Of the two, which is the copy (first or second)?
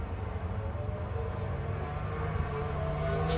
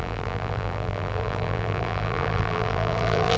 second